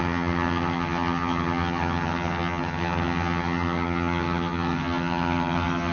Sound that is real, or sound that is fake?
fake